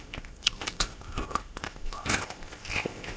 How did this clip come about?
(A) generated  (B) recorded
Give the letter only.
A